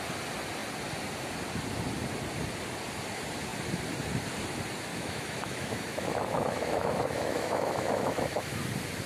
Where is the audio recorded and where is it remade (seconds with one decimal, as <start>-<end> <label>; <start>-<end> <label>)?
0.0-4.9 recorded; 4.9-8.6 remade; 8.6-9.1 recorded